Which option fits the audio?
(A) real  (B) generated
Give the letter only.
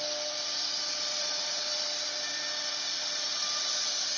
A